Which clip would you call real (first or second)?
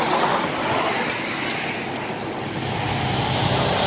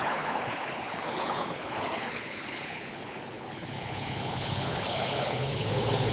first